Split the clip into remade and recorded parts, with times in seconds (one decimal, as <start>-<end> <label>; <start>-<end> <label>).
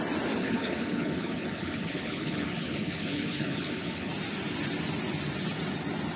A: 0.0-0.4 recorded; 0.4-4.1 remade; 4.1-6.2 recorded